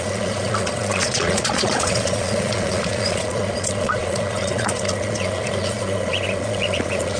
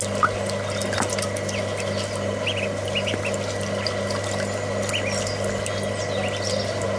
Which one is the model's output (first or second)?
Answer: first